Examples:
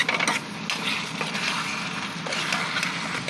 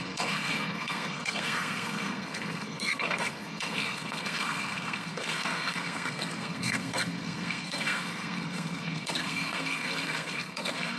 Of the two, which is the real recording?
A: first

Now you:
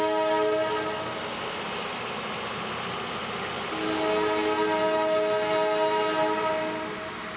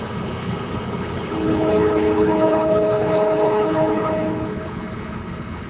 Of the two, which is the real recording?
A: first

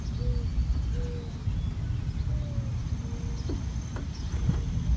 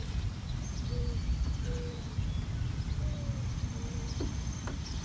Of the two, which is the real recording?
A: first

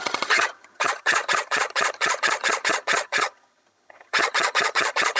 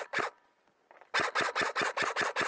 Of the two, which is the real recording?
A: second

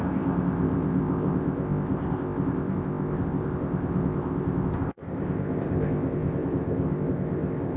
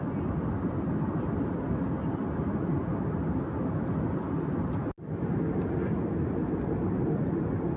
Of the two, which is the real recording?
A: second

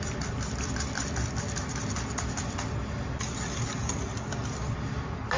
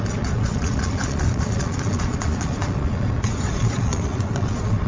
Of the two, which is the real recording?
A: first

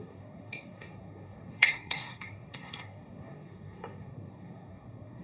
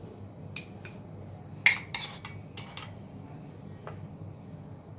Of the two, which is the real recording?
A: second